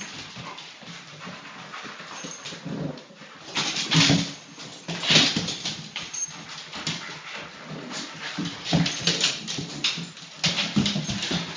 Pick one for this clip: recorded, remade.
recorded